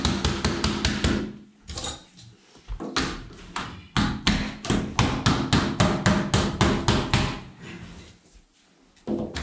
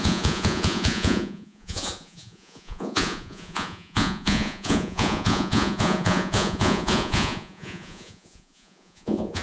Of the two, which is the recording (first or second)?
first